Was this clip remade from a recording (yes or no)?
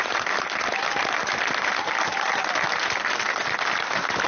no